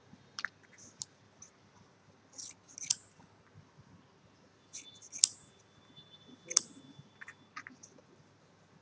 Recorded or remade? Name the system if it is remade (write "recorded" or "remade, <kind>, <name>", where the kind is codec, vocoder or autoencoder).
recorded